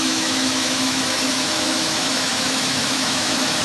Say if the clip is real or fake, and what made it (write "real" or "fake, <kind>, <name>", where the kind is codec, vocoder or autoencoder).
fake, autoencoder, DAC-VAE